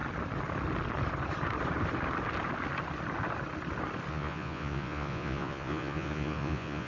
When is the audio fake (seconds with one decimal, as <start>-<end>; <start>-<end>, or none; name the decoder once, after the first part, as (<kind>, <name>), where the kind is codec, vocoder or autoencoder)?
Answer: 4.1-6.9 (vocoder, Vocos)